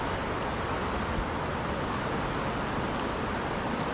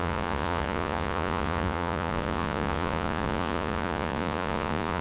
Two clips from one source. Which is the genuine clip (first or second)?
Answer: first